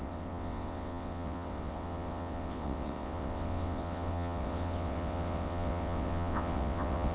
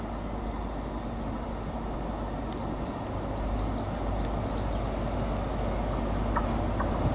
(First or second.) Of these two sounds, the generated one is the first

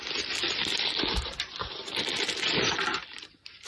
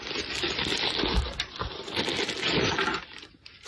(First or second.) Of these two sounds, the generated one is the first